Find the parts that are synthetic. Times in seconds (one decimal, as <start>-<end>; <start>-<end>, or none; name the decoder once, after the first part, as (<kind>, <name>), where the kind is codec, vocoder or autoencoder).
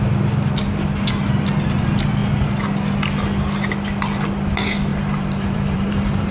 4.9-6.3 (vocoder, BigVGAN v2)